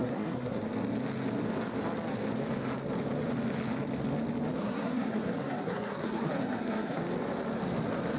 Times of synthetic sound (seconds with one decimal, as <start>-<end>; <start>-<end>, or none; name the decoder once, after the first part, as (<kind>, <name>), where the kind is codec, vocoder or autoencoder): 0.0-0.6 (codec, SNAC); 4.6-7.0